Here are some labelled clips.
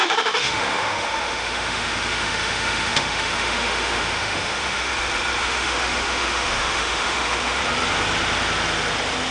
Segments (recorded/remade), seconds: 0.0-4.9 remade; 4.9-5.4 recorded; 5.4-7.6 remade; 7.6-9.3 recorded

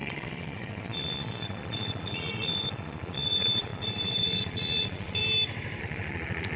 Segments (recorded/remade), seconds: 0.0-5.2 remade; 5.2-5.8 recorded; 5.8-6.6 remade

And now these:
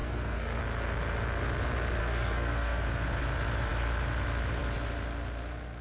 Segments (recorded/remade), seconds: 0.0-0.6 remade; 0.6-2.0 recorded; 2.0-2.8 remade; 2.8-5.8 recorded

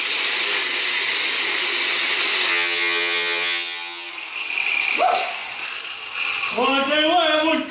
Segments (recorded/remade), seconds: 0.0-2.5 recorded; 2.5-4.1 remade; 4.1-7.7 recorded